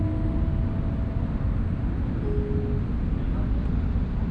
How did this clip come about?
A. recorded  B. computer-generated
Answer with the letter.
A